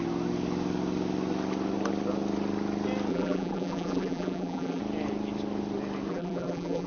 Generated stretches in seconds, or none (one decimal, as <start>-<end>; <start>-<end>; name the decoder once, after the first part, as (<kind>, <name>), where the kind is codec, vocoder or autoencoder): 3.1-4.8 (vocoder, BigVGAN v2); 6.1-6.9